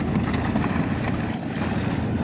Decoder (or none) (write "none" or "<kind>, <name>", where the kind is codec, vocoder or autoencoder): none